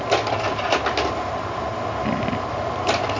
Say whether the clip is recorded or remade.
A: recorded